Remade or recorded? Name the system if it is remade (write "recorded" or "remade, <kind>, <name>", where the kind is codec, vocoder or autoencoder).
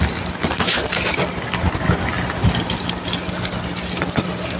recorded